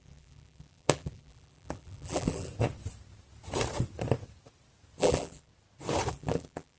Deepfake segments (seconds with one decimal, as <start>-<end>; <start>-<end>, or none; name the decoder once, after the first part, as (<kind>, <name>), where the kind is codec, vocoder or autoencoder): 0.0-2.5 (vocoder, BigVGAN v2); 5.0-5.5; 6.1-6.8